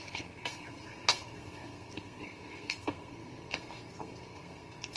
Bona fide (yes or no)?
no